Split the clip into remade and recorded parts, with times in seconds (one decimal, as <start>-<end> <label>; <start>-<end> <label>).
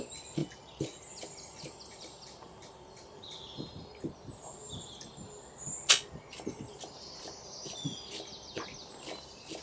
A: 0.0-9.6 recorded